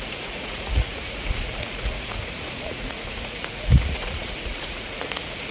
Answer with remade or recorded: remade